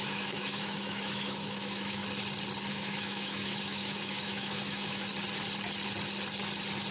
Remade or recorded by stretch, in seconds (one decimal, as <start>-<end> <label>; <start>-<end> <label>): 0.0-2.0 remade; 2.0-2.7 recorded; 2.7-5.1 remade; 5.1-6.9 recorded